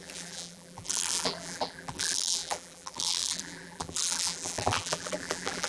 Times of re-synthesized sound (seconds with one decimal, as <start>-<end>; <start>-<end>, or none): 0.0-5.7